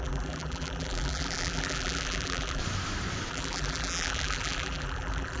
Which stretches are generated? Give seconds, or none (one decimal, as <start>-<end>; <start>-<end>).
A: 0.0-2.6; 3.3-5.4